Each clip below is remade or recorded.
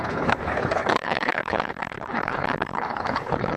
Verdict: remade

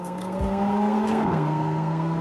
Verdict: remade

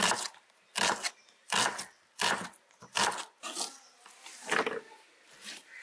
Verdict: recorded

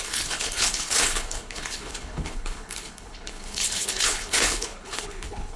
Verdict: remade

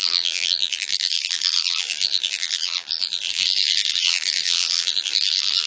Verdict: remade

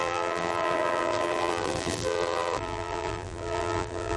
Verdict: remade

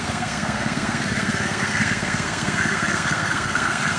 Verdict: remade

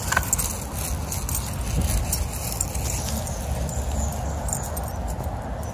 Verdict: recorded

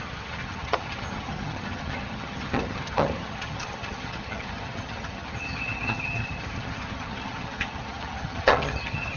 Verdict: remade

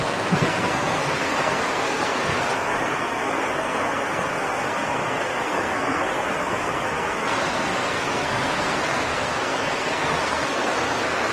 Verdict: remade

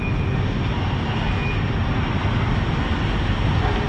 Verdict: recorded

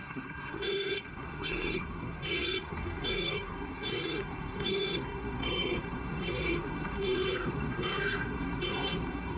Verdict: remade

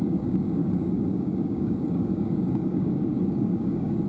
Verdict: remade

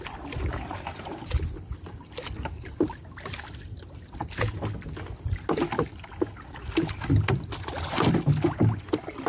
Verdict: recorded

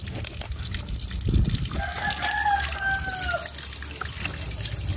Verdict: recorded